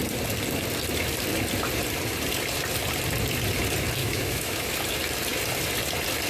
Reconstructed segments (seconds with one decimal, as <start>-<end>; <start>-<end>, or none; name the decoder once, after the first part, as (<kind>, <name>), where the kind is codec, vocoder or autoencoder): 4.0-4.7 (autoencoder, DAC-VAE)